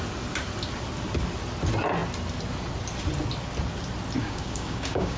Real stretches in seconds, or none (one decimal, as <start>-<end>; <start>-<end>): 0.0-4.2